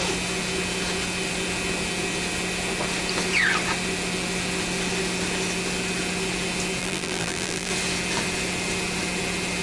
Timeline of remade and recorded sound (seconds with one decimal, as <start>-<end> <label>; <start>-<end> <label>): 0.0-6.8 recorded; 6.8-7.7 remade; 7.7-9.6 recorded